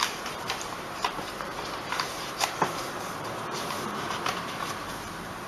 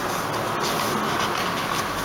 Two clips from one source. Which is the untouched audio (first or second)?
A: second